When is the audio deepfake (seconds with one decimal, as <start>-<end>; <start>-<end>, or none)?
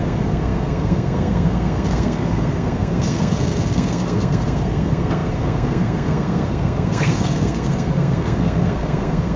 0.0-9.4